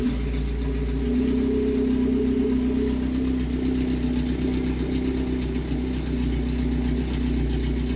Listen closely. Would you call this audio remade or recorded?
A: recorded